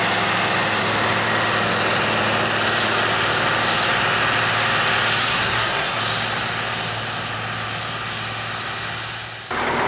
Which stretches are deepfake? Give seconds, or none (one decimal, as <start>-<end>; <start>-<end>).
5.2-6.0